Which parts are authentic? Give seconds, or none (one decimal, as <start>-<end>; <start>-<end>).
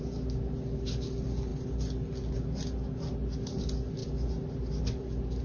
0.0-5.4